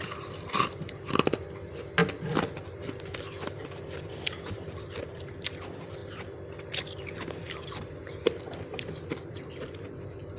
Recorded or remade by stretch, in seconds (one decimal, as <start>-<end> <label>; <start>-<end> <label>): 0.0-2.0 remade; 2.0-2.8 recorded; 2.8-6.0 remade; 6.0-9.3 recorded; 9.3-10.4 remade